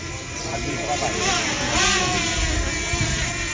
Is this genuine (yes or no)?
yes